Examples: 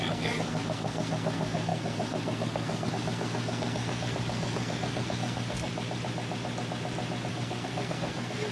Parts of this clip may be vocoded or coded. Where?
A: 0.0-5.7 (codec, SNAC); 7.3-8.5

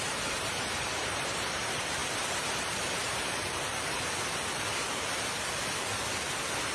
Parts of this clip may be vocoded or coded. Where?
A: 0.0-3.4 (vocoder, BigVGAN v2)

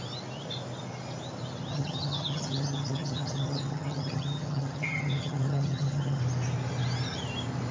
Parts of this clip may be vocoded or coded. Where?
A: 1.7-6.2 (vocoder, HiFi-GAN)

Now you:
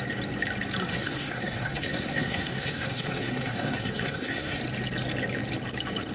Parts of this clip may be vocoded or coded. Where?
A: 0.9-4.6 (codec, SNAC)

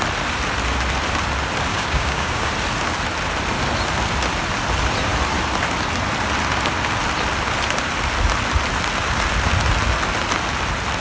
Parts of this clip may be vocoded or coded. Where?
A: 1.7-2.5 (codec, DAC)

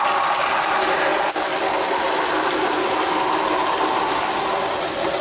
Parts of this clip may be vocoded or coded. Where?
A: none

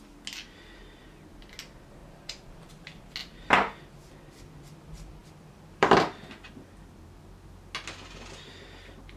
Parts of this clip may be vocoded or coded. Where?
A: 2.0-2.7 (vocoder, BigVGAN v2); 5.2-6.5

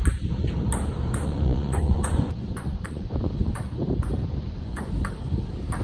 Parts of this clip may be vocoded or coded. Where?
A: 1.2-3.7 (vocoder, Vocos); 4.2-4.9